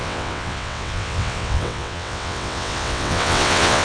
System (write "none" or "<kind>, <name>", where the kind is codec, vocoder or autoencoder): vocoder, WaveNeXt